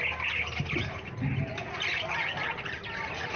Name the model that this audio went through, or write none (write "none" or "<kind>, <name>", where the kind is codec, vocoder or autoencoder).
none